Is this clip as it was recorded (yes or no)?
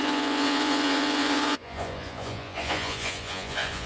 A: no